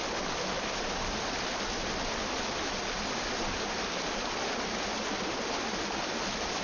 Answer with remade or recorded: recorded